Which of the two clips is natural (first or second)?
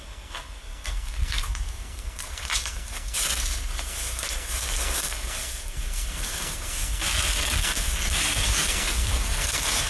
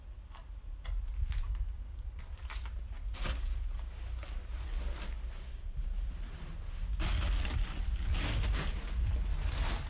second